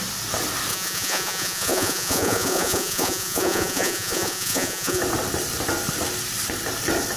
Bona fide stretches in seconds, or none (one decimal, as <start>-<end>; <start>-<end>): 0.0-0.7; 5.0-7.2